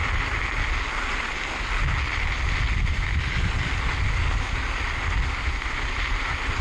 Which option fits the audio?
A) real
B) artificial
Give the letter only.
A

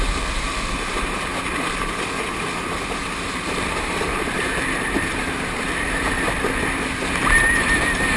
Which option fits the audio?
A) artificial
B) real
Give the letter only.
A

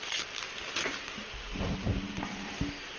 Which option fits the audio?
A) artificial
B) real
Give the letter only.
B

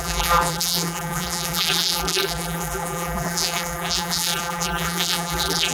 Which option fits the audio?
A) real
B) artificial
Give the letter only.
B